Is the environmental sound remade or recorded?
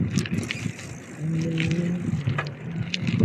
recorded